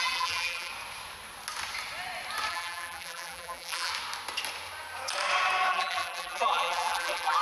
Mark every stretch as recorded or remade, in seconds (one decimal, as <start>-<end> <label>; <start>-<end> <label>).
0.0-0.7 remade; 0.7-2.5 recorded; 2.5-3.9 remade; 3.9-5.7 recorded; 5.7-7.4 remade